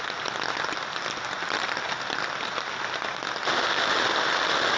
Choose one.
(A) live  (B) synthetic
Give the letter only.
A